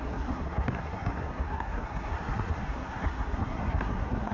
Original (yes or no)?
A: no